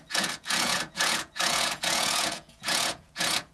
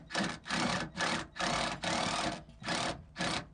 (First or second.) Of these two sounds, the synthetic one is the first